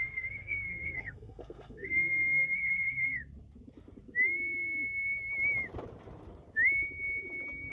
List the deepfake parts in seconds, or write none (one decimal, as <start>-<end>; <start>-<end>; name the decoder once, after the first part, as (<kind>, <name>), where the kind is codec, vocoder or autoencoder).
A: 0.0-3.2 (codec, SNAC)